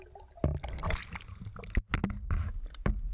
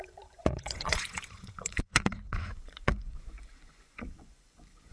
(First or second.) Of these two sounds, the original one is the first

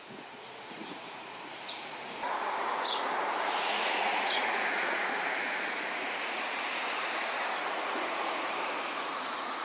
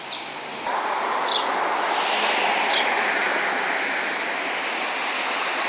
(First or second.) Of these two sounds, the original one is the second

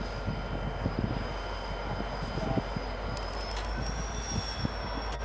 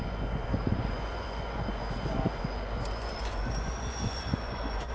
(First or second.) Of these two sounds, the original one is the first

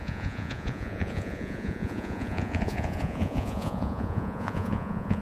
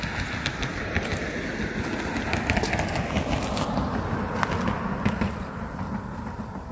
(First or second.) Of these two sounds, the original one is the second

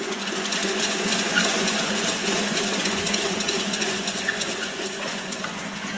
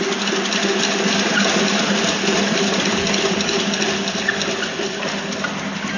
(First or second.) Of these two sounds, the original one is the second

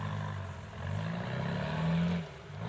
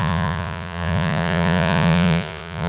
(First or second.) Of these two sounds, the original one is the first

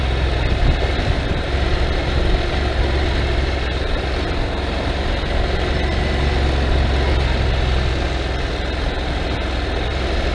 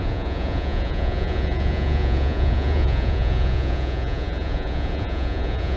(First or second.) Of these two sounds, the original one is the first